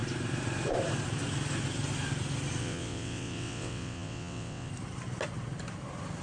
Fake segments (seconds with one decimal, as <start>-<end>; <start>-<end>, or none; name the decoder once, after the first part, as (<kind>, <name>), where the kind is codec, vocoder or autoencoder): 2.6-4.7 (vocoder, WaveNeXt)